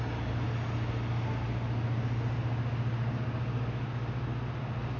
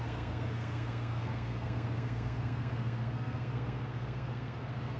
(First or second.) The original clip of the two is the first